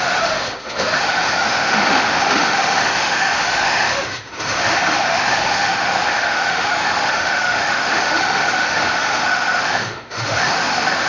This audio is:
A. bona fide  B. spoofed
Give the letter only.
B